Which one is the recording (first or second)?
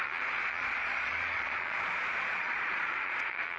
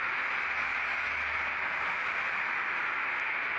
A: second